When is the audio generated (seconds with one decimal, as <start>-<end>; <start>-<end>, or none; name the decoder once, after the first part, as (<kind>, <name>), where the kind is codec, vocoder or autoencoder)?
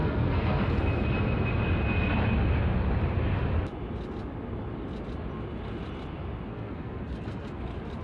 0.0-0.6 (codec, SNAC); 6.5-7.6